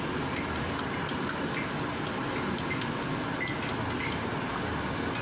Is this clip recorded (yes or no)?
yes